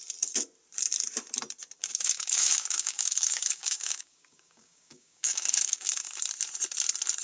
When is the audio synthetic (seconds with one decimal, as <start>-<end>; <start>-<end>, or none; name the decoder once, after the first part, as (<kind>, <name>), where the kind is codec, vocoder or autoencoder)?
1.8-6.1 (codec, DAC)